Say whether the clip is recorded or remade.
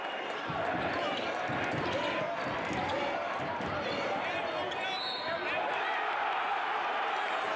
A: recorded